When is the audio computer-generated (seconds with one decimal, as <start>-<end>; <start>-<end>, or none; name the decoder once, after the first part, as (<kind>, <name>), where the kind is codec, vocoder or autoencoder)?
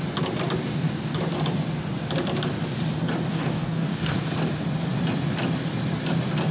3.3-4.2 (codec, DAC)